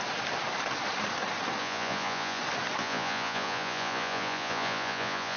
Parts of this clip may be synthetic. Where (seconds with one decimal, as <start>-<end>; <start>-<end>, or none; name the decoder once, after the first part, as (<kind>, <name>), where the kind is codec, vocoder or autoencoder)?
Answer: 1.6-2.4 (vocoder, Vocos); 2.8-5.4